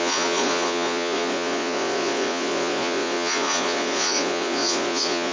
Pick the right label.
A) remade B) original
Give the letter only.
A